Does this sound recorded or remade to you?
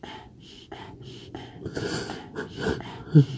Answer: remade